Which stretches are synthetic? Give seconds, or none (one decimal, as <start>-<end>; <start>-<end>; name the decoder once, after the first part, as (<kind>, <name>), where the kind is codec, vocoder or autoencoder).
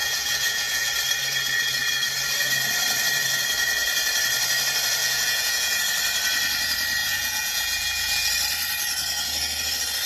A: 0.0-0.9 (vocoder, Vocos); 5.0-5.8; 7.0-8.3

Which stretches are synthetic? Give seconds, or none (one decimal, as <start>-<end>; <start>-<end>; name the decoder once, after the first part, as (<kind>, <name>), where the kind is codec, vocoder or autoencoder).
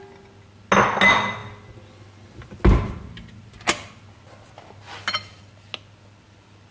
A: none